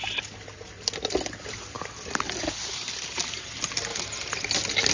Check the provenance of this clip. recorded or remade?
recorded